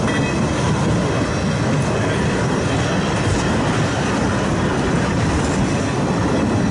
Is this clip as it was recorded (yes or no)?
yes